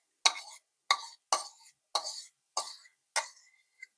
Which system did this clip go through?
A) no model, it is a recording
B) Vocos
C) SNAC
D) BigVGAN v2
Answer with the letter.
A